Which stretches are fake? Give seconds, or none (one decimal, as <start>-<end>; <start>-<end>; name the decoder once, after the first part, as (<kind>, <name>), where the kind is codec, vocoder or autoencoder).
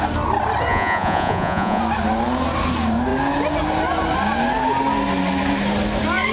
0.7-1.8 (vocoder, Vocos)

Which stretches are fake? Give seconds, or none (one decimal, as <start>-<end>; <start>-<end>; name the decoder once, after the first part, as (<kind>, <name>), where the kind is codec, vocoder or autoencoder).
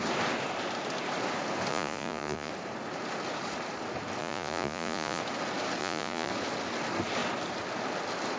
1.7-2.5 (vocoder, Vocos); 4.2-5.2; 5.8-6.3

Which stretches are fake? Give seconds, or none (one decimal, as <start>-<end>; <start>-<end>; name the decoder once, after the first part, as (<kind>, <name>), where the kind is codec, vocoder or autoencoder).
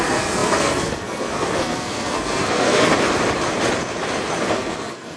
0.0-2.9 (codec, SNAC); 4.5-5.2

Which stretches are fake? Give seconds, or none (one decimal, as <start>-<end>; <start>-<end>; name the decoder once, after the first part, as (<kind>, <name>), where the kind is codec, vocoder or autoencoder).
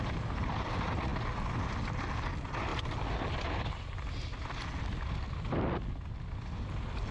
none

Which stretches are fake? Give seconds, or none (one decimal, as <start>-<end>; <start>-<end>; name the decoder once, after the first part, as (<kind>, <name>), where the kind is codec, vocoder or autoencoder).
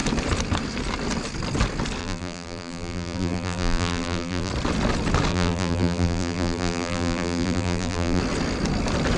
2.0-4.5 (vocoder, BigVGAN v2); 5.3-8.2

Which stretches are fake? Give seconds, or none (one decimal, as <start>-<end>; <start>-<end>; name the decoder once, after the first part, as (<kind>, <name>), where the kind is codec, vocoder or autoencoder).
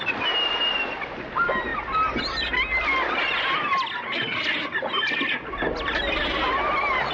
none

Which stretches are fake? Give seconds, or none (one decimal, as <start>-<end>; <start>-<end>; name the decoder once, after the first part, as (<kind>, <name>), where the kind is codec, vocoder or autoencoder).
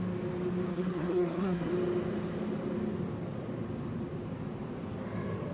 0.7-1.7 (codec, SNAC)